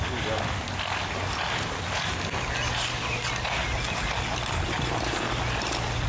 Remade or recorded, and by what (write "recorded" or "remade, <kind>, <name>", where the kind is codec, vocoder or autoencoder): recorded